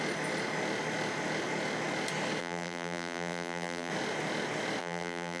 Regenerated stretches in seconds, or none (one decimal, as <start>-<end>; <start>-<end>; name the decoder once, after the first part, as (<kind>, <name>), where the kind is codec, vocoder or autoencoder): 2.4-3.9 (vocoder, BigVGAN v2); 4.8-5.4